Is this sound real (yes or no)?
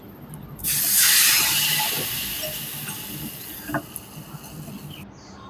yes